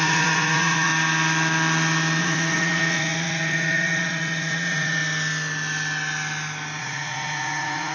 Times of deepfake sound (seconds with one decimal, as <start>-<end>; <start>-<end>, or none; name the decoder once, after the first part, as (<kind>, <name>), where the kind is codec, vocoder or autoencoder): 0.0-0.9 (vocoder, Vocos); 2.2-5.0; 6.8-7.9